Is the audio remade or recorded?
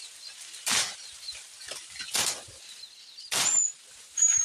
recorded